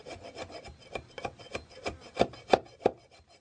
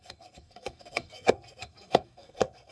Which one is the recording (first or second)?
first